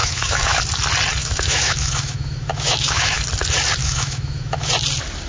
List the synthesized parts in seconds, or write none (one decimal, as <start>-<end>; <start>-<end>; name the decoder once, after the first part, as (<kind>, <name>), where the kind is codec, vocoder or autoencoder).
0.0-0.6 (autoencoder, DAC-VAE); 1.2-3.2; 3.8-4.7